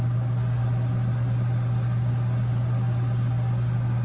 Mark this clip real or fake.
real